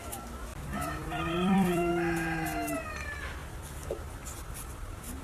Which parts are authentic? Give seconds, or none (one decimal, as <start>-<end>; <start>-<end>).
0.0-0.5; 1.9-5.2